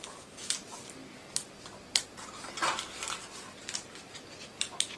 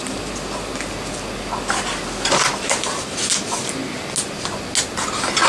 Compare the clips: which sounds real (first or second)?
second